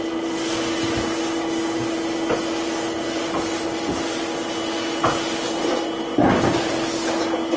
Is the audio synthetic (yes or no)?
no